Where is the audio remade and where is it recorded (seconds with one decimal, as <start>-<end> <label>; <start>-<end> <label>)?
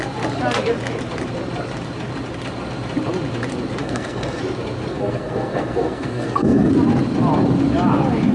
0.0-3.8 recorded; 3.8-4.4 remade; 4.4-4.9 recorded; 4.9-6.7 remade; 6.7-8.3 recorded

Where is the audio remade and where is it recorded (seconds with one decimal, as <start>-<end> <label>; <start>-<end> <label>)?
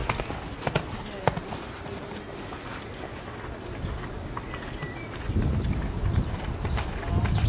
0.0-7.5 recorded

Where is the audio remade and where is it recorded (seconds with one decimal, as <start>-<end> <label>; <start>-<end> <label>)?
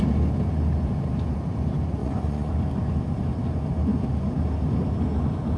0.0-2.0 recorded; 2.0-2.5 remade; 2.5-5.6 recorded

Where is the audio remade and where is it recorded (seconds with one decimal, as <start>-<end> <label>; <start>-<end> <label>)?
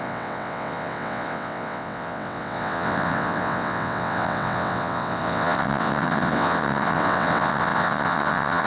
0.0-8.7 remade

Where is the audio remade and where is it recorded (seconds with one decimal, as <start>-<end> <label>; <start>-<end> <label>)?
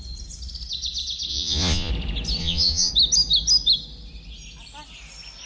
0.0-1.3 recorded; 1.3-1.9 remade; 1.9-2.4 recorded; 2.4-2.9 remade; 2.9-5.5 recorded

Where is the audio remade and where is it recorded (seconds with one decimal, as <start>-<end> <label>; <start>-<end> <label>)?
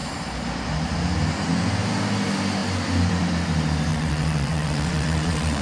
0.0-3.9 recorded; 3.9-5.6 remade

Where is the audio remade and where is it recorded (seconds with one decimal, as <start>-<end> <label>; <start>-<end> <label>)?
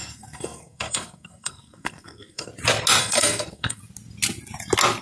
0.0-2.5 remade; 2.5-3.0 recorded; 3.0-3.8 remade; 3.8-5.0 recorded